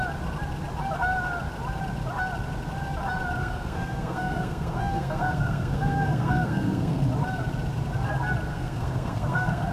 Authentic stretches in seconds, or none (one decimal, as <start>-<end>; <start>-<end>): 0.0-3.4; 7.0-8.5